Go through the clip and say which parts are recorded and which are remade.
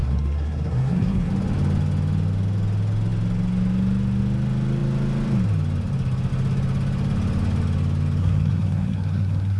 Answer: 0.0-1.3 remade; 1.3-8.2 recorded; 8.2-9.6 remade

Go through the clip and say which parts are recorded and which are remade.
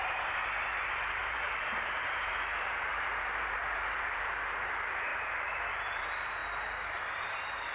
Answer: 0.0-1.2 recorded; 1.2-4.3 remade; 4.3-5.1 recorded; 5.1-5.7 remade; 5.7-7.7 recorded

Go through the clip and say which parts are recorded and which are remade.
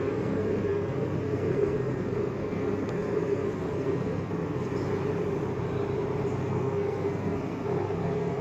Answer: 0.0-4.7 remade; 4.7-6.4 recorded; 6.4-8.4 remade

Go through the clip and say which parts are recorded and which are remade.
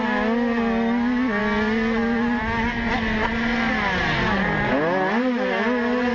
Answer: 0.0-6.1 recorded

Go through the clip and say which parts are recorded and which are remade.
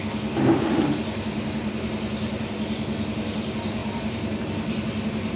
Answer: 0.0-3.8 recorded; 3.8-4.4 remade; 4.4-5.4 recorded